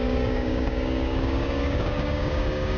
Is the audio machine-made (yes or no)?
yes